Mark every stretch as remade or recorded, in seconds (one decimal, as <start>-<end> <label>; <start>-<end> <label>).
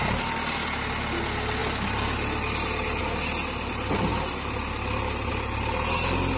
0.0-6.4 recorded